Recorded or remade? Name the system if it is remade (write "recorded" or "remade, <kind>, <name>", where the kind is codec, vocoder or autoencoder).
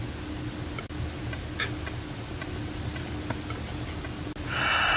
recorded